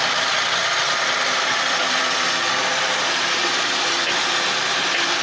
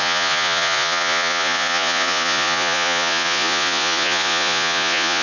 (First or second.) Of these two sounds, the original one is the first